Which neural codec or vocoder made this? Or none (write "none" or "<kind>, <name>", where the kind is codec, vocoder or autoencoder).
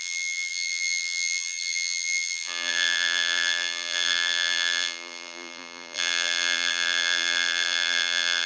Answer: vocoder, BigVGAN v2